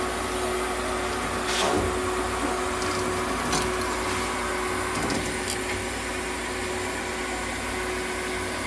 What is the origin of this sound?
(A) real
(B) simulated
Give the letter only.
A